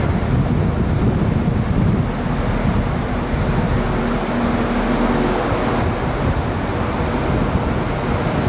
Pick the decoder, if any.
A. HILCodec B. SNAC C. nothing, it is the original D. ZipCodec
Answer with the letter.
C